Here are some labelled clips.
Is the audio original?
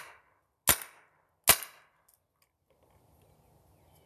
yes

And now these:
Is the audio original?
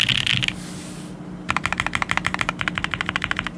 yes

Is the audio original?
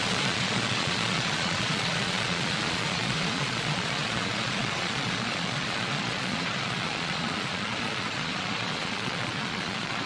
no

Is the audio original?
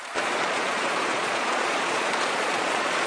no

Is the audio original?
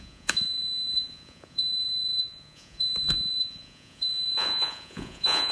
no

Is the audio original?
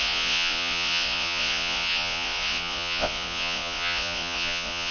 no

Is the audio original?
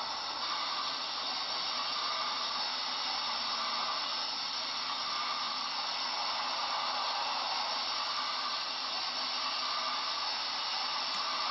yes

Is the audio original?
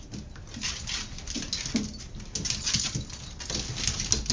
yes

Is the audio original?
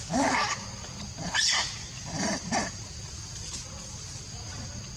yes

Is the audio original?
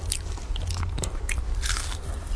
yes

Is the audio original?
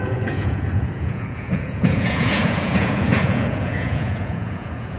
no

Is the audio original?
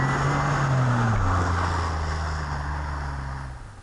yes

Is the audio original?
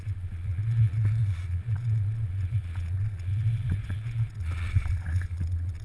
no